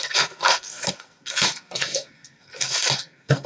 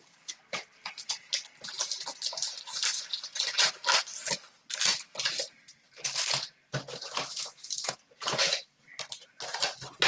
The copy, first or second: first